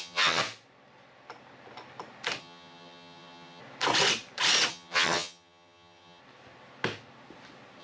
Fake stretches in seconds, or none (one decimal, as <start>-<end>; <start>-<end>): 0.0-0.4; 2.4-3.6; 4.7-6.2